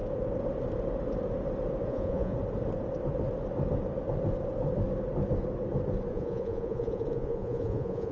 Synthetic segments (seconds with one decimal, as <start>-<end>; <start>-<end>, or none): 1.9-2.3; 6.1-8.1